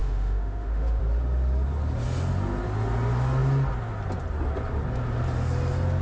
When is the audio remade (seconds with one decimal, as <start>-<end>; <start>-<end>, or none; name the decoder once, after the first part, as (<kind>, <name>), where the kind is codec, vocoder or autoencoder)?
0.0-1.0 (autoencoder, DAC-VAE)